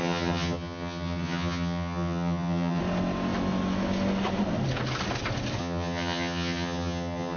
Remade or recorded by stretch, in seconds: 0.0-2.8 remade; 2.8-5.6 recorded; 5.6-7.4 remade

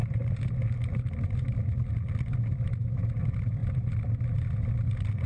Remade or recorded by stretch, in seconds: 0.0-5.3 recorded